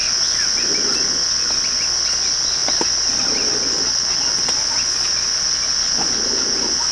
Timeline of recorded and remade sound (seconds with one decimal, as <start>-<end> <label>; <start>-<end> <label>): 0.0-6.9 recorded